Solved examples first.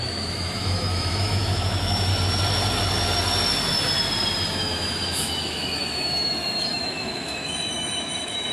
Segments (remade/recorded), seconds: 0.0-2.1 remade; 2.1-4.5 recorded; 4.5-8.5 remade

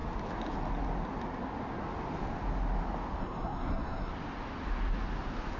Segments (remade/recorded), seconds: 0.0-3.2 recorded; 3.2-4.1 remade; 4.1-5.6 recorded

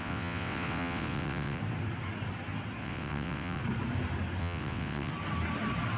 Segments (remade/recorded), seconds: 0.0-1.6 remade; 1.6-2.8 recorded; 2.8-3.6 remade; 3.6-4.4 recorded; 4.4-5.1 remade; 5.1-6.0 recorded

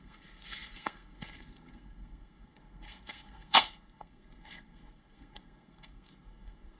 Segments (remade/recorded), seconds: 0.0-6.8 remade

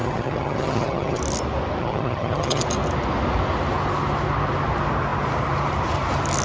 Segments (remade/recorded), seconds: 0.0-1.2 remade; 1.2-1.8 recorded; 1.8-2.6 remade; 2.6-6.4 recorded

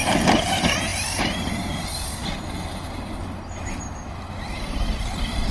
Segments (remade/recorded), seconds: 0.0-5.5 recorded

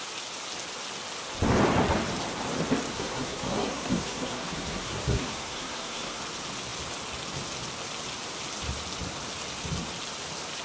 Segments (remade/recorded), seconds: 0.0-2.9 recorded; 2.9-6.2 remade; 6.2-10.6 recorded